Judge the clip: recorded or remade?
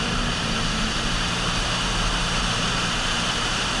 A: remade